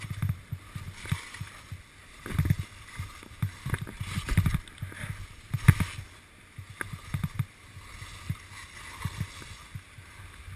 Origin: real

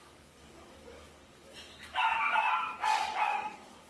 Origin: fake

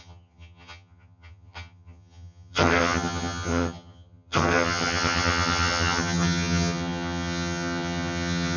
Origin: fake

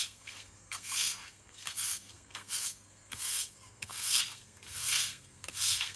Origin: fake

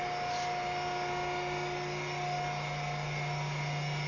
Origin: real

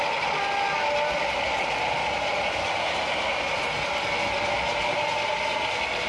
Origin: real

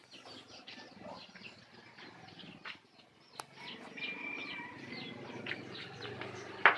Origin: real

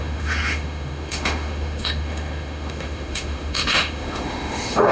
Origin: fake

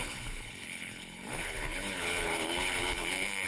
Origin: fake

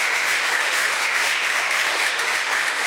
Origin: fake